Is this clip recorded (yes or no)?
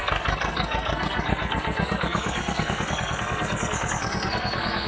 no